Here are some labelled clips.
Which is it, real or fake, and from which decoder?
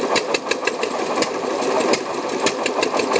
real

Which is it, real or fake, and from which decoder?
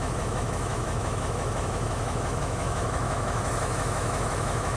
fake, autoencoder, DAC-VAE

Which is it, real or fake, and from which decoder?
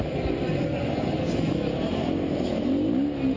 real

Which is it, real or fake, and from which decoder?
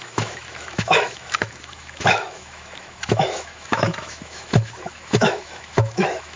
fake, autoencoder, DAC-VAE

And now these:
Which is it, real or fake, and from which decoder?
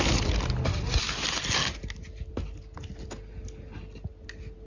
real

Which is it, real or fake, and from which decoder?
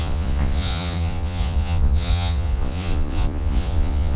fake, vocoder, Vocos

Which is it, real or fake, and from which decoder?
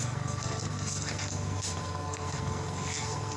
fake, codec, SNAC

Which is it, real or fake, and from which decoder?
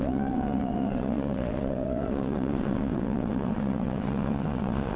fake, vocoder, WaveNeXt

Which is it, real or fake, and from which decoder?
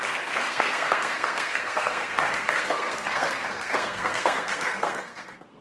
fake, codec, SNAC